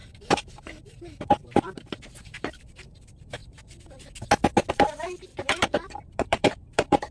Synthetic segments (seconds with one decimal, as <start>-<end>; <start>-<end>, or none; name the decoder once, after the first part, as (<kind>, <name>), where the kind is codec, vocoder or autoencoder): 0.0-3.4 (vocoder, BigVGAN v2); 4.7-7.1